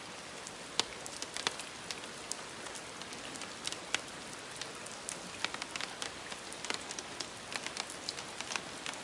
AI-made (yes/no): no